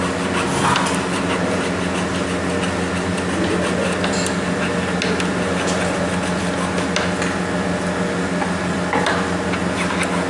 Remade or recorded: recorded